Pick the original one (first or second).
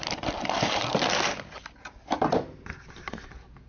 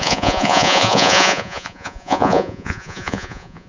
first